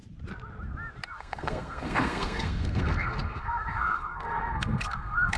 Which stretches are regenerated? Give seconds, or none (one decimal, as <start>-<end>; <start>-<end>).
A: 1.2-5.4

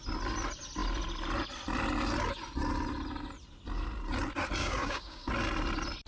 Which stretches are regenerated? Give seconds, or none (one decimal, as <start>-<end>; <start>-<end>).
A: 4.6-5.3

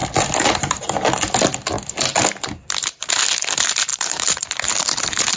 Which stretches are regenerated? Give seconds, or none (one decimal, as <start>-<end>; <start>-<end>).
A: 3.9-5.4

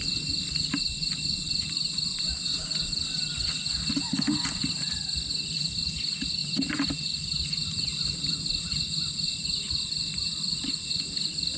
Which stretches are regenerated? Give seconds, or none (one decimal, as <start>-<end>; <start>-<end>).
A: none